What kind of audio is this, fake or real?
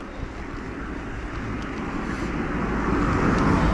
real